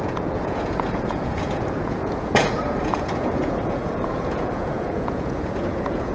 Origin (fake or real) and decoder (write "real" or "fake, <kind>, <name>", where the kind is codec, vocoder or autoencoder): fake, vocoder, Vocos